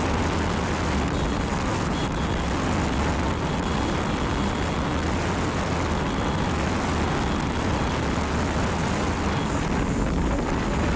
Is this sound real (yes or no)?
yes